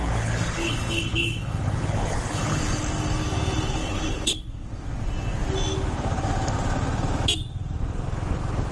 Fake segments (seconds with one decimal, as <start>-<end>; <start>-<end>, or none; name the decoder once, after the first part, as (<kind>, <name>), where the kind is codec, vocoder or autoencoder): 0.0-2.6 (codec, HILCodec); 3.8-4.5